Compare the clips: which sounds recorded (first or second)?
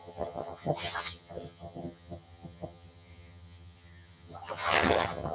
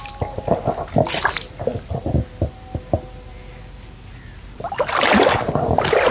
second